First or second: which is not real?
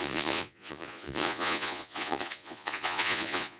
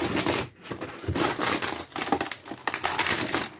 first